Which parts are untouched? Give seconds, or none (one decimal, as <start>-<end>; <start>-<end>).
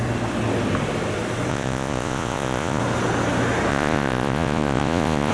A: 0.0-1.5; 2.8-3.7